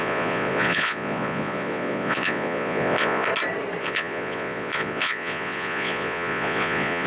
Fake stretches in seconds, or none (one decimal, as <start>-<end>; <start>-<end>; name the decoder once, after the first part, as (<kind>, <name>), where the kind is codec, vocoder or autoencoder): 0.0-3.3 (vocoder, Vocos); 3.8-7.1